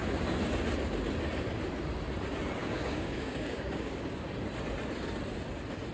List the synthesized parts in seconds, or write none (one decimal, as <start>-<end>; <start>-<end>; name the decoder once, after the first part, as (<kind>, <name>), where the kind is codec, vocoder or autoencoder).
2.6-4.3 (codec, DAC)